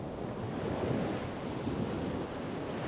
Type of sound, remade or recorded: recorded